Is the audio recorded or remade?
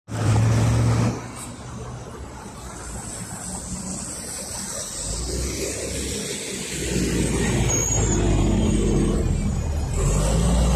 recorded